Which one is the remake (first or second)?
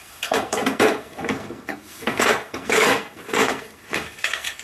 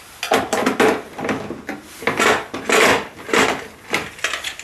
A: first